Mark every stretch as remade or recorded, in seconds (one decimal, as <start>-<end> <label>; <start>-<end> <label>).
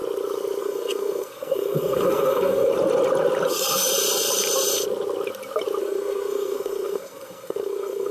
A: 0.0-0.6 recorded; 0.6-2.7 remade; 2.7-3.5 recorded; 3.5-3.9 remade; 3.9-5.8 recorded; 5.8-8.1 remade